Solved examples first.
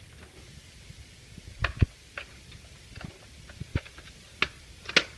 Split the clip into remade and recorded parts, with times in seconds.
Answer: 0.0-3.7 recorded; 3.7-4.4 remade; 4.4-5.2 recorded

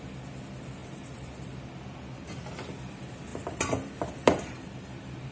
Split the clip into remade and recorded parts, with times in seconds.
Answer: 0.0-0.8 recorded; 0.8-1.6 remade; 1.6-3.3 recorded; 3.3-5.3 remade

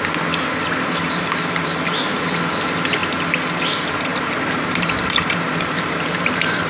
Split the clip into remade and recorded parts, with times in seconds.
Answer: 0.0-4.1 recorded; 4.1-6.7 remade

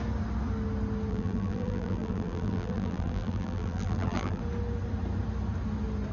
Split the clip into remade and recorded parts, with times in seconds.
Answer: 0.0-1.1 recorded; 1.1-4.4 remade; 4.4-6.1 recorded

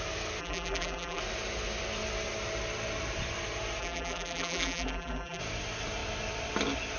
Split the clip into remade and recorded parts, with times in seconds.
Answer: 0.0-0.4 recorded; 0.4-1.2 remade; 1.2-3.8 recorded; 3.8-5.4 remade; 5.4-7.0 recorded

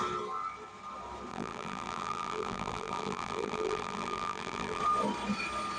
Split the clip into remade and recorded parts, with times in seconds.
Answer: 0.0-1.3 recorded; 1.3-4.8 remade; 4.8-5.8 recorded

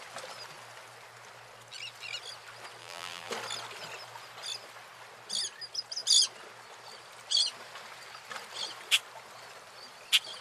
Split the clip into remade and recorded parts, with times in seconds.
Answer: 0.0-2.8 recorded; 2.8-3.3 remade; 3.3-10.4 recorded